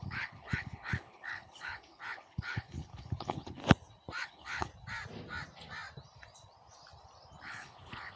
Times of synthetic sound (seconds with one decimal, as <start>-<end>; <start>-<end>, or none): 0.0-3.6; 4.2-4.7; 7.4-8.2